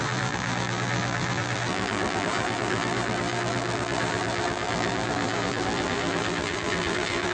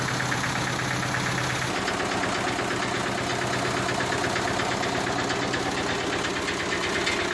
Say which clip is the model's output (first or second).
first